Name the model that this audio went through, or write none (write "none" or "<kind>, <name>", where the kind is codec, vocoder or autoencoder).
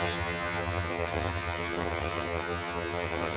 vocoder, HiFi-GAN